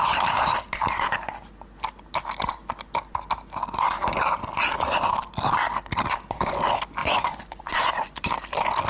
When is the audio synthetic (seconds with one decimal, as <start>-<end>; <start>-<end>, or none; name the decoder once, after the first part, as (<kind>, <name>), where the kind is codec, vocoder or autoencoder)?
7.0-8.3 (vocoder, Vocos)